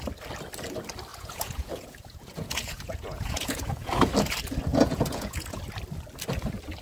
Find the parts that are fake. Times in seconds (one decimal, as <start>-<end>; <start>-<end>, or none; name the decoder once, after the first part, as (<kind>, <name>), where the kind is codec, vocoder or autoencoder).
1.1-4.1 (vocoder, Vocos); 4.7-5.6